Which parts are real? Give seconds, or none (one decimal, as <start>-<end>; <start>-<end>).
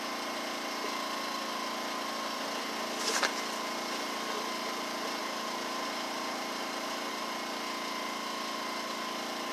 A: 0.0-5.2; 7.1-9.5